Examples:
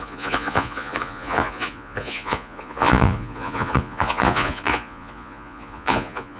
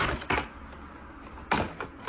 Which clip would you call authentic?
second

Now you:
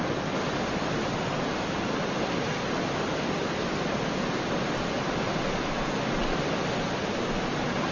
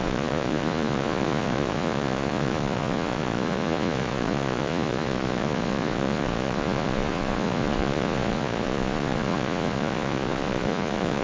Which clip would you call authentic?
first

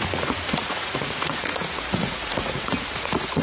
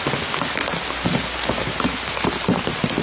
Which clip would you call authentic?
second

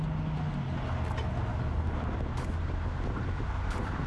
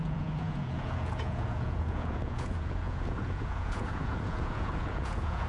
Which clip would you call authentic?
first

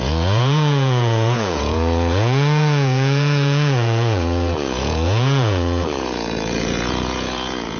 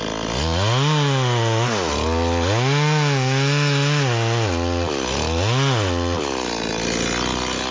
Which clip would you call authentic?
second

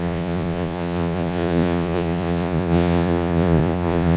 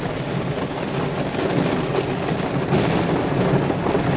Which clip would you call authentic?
second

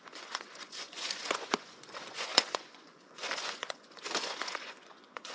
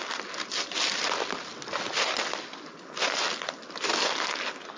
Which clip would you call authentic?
second